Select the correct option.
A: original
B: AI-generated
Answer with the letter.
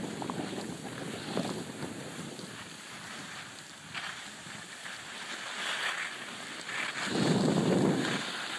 A